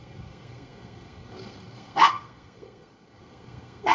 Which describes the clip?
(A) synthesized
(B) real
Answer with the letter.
A